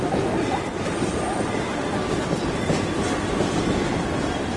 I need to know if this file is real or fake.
real